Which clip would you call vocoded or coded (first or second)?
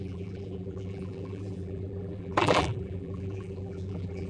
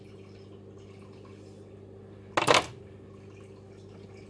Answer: first